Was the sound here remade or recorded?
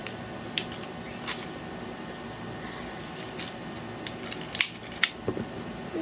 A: recorded